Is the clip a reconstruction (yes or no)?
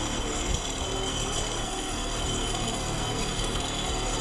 yes